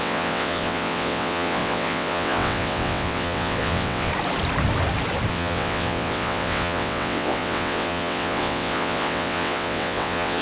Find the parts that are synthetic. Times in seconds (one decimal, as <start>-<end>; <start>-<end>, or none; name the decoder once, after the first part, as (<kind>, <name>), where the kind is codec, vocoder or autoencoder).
0.0-4.1 (vocoder, WaveNeXt); 5.3-10.4